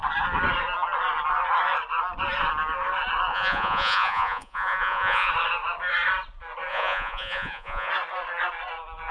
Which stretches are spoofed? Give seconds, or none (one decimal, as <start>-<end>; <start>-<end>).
3.3-5.3; 6.7-7.9